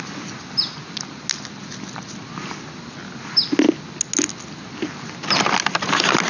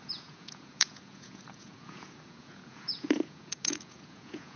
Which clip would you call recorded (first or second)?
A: first